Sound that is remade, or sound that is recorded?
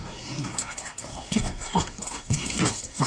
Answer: remade